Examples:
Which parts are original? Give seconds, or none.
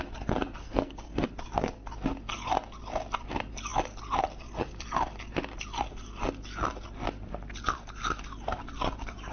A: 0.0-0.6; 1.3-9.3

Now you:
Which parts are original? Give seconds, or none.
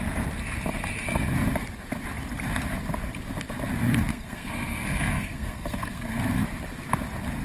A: 0.0-4.1; 6.2-7.4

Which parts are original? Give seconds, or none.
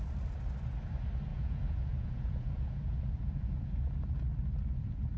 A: 0.0-1.3; 3.7-5.2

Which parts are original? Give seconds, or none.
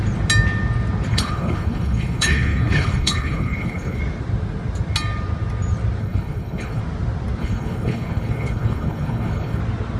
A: 0.0-1.1; 4.0-6.0; 6.8-7.4; 9.6-10.0